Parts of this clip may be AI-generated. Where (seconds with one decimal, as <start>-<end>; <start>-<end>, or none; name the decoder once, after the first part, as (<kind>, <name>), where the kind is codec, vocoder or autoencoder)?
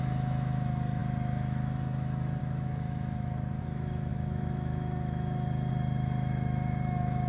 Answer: 0.0-7.3 (autoencoder, DAC-VAE)